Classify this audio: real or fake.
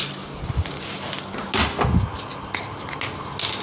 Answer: real